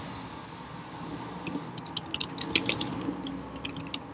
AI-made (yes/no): no